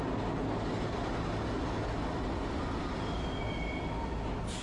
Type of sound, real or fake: real